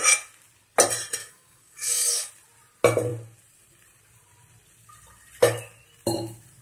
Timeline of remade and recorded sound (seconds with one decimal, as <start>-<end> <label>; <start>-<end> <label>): 0.0-1.2 recorded; 1.2-2.3 remade; 2.3-6.6 recorded